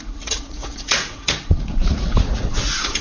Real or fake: fake